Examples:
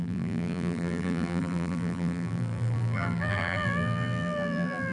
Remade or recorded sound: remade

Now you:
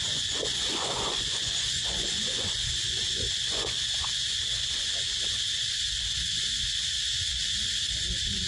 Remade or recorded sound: remade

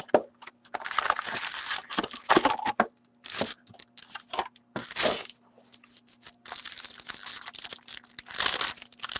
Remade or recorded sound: recorded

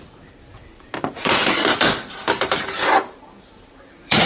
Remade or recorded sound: remade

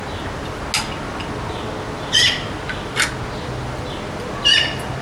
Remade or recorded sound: recorded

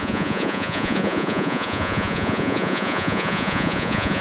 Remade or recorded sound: remade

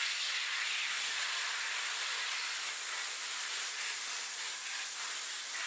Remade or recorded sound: recorded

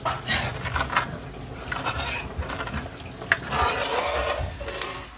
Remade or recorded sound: recorded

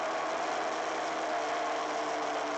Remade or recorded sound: recorded